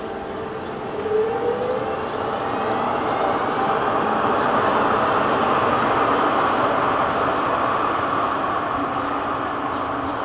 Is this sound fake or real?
real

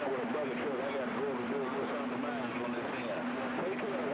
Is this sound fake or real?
real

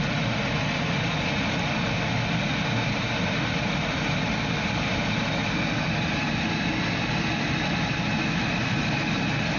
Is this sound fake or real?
real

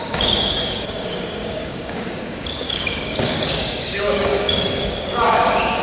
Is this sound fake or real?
fake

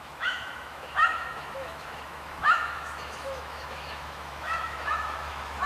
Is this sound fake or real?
fake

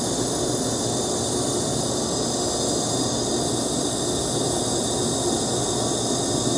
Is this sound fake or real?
real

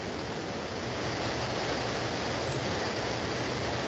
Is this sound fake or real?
real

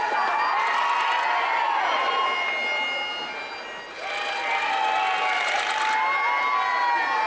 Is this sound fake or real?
real